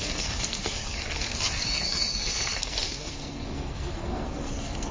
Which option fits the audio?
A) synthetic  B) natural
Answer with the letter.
A